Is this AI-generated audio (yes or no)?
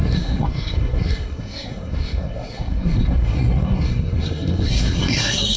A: yes